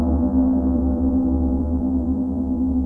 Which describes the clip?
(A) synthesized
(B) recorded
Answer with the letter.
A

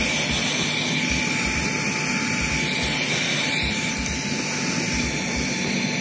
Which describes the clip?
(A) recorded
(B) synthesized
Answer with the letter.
A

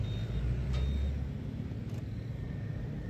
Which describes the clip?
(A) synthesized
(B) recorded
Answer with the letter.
B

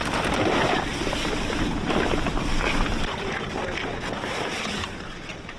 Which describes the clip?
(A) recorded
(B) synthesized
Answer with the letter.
A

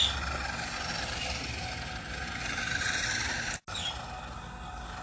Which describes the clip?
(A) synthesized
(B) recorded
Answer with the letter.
B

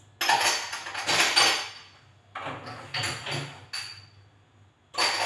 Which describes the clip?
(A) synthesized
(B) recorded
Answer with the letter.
B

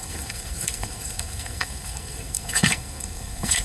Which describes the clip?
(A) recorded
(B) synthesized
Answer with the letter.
B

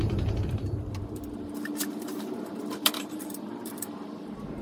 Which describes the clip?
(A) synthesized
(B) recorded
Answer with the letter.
A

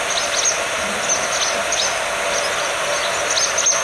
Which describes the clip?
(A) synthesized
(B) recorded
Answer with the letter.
B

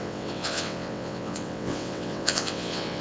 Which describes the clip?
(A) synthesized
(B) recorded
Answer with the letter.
A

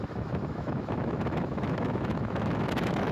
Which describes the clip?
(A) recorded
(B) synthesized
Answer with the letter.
B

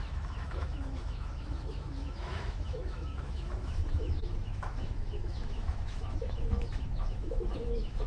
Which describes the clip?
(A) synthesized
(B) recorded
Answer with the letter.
A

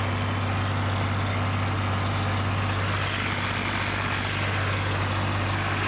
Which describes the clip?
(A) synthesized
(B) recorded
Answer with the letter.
B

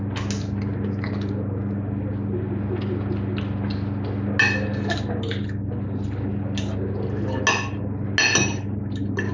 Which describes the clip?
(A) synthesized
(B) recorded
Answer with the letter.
B